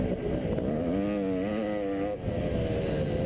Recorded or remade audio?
recorded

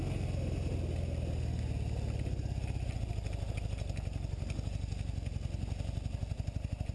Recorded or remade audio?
recorded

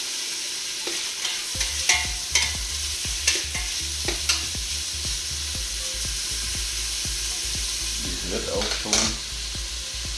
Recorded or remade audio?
recorded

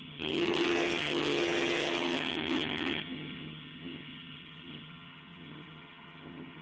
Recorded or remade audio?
remade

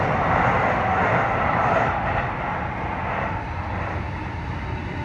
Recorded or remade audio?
recorded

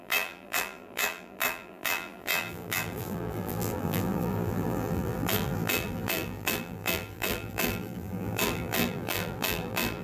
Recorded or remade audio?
remade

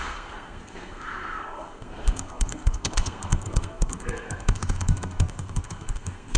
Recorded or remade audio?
remade